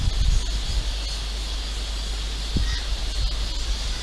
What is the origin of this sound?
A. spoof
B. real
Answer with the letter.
B